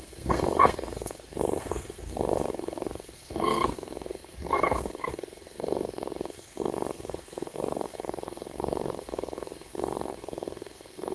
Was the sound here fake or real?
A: fake